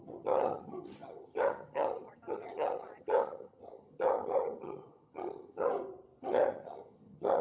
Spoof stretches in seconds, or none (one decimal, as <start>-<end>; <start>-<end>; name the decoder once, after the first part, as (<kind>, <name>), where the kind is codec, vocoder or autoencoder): 0.0-5.7 (vocoder, HiFi-GAN); 6.2-7.4